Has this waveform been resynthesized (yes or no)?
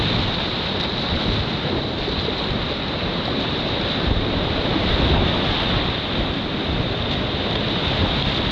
no